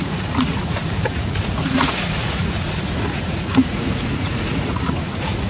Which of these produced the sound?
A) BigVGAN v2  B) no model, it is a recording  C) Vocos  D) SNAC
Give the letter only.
C